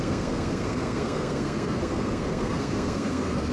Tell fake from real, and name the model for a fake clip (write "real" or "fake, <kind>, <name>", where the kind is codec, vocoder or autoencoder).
fake, codec, SNAC